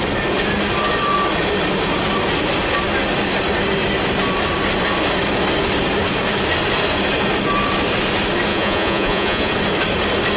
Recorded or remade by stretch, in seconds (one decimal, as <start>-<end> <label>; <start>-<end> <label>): 0.0-8.5 recorded; 8.5-9.5 remade; 9.5-10.4 recorded